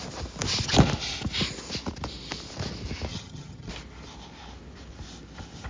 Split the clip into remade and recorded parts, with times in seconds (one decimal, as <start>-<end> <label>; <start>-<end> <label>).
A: 0.0-3.1 recorded; 3.1-3.7 remade; 3.7-5.7 recorded

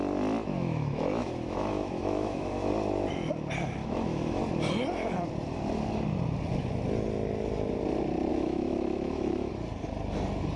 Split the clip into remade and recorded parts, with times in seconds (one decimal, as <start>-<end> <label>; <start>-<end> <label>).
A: 0.0-0.5 recorded; 0.5-2.7 remade; 2.7-3.8 recorded; 3.8-4.4 remade; 4.4-8.3 recorded; 8.3-9.5 remade; 9.5-10.6 recorded

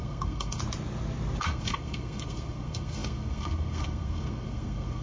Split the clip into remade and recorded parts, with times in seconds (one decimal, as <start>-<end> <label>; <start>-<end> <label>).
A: 0.0-0.6 remade; 0.6-1.4 recorded; 1.4-5.0 remade

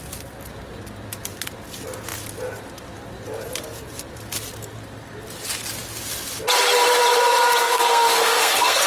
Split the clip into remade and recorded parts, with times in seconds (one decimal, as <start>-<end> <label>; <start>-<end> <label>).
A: 0.0-7.6 recorded; 7.6-8.9 remade

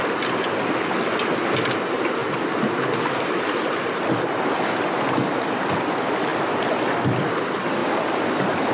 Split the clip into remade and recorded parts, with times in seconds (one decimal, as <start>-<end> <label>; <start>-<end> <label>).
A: 0.0-7.8 recorded; 7.8-8.7 remade

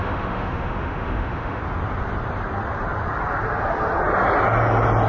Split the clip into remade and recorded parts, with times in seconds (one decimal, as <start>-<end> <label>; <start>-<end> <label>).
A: 0.0-1.6 remade; 1.6-5.1 recorded

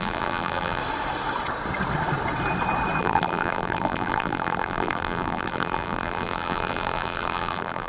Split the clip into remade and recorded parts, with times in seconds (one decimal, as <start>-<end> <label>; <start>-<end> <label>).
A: 0.0-0.8 remade; 0.8-3.0 recorded; 3.0-7.9 remade

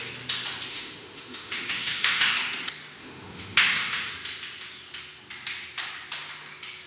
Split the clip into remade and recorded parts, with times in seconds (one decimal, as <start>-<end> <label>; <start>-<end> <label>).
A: 0.0-0.7 recorded; 0.7-2.3 remade; 2.3-3.0 recorded; 3.0-4.1 remade; 4.1-6.9 recorded